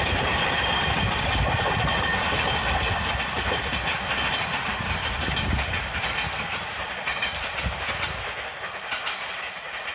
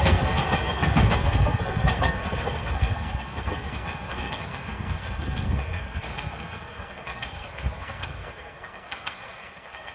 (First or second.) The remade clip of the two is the second